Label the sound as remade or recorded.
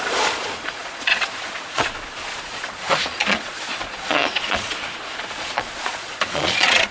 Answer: remade